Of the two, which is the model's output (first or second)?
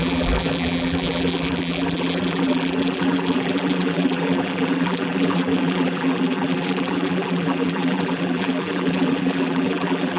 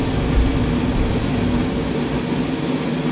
first